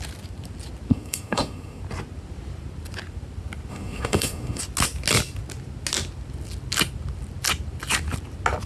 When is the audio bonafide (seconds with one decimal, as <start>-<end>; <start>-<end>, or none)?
0.0-0.9; 1.8-3.7; 4.6-8.7